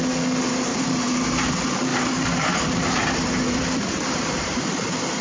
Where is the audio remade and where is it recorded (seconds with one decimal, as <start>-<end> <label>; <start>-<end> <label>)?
0.0-0.7 recorded; 0.7-1.5 remade; 1.5-1.9 recorded; 1.9-4.7 remade; 4.7-5.2 recorded